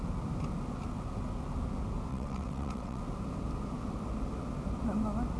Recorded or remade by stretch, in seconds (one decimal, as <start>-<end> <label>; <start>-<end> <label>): 0.0-2.1 recorded; 2.1-3.0 remade; 3.0-5.4 recorded

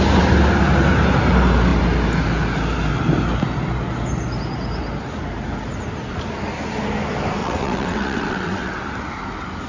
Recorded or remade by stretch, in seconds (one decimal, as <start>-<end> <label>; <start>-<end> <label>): 0.0-7.4 recorded; 7.4-8.7 remade; 8.7-9.7 recorded

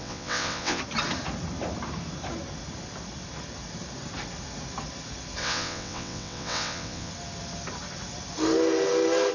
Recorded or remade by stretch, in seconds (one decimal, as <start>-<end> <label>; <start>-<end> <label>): 0.0-0.8 remade; 0.8-5.4 recorded; 5.4-7.1 remade; 7.1-9.3 recorded